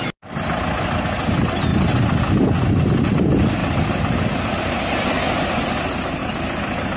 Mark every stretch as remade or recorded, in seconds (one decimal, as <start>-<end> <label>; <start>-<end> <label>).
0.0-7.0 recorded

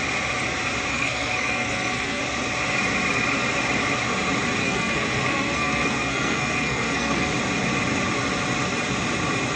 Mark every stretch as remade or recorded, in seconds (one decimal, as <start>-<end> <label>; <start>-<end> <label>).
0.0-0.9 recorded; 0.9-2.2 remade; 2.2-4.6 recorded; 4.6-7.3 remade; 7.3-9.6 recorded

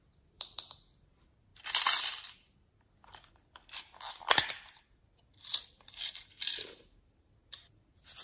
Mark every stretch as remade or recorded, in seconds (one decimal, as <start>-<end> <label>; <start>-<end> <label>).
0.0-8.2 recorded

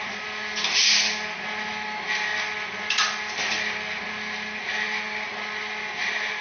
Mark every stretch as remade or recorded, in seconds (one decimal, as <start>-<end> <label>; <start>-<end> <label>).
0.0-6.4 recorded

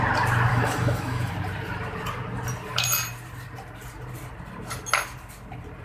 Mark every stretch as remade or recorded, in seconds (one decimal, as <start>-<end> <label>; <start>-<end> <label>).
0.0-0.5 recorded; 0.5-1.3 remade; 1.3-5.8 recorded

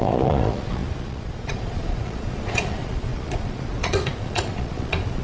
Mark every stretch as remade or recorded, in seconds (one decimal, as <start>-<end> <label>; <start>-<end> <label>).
0.0-5.2 remade

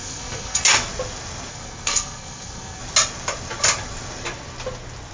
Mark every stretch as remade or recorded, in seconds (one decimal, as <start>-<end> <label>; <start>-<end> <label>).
0.0-0.6 remade; 0.6-1.5 recorded; 1.5-2.8 remade; 2.8-5.1 recorded